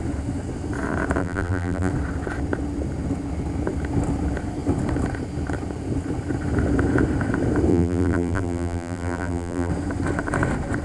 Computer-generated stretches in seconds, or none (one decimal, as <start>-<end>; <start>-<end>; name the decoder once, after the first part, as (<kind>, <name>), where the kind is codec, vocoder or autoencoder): 1.2-1.9 (vocoder, BigVGAN v2); 7.7-9.7